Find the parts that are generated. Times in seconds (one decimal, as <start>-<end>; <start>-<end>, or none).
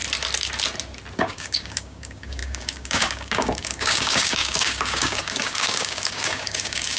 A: 1.2-7.0